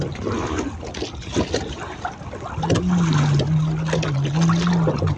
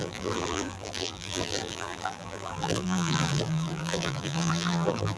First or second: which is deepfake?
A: second